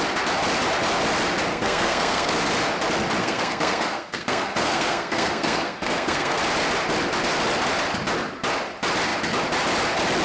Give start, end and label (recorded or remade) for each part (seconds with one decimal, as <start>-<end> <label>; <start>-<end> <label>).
0.0-1.5 recorded; 1.5-2.3 remade; 2.3-3.2 recorded; 3.2-6.4 remade; 6.4-10.2 recorded